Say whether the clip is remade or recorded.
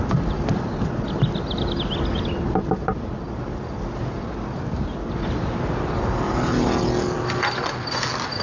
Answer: recorded